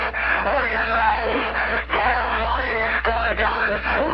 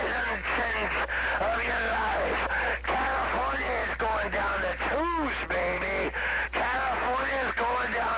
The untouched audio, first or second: second